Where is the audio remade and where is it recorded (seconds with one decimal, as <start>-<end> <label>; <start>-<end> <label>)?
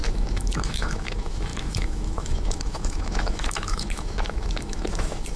0.0-5.4 remade